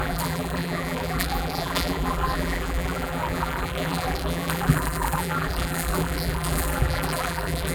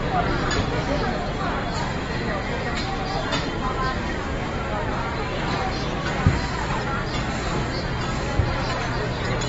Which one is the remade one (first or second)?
first